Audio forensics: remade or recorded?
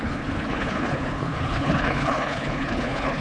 remade